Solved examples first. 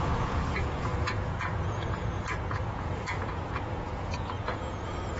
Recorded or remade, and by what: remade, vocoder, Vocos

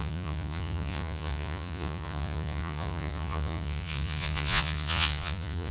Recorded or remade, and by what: remade, vocoder, Vocos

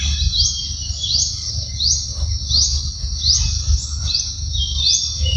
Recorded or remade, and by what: recorded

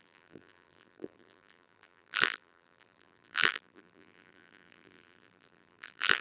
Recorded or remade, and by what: remade, vocoder, BigVGAN v2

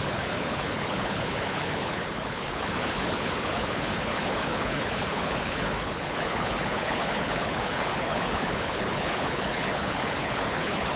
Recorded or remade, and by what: remade, codec, HILCodec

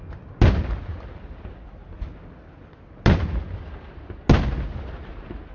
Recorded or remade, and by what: recorded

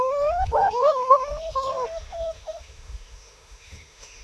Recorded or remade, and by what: remade, autoencoder, DAC-VAE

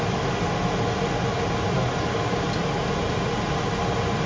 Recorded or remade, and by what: recorded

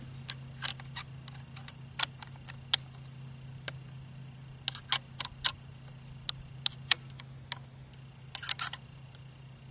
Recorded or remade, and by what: recorded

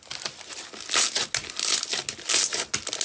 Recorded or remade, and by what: recorded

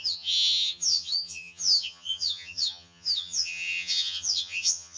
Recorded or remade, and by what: remade, vocoder, HiFi-GAN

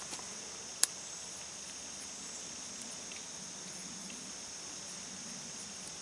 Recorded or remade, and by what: recorded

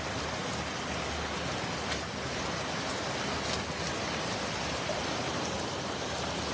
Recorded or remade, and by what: recorded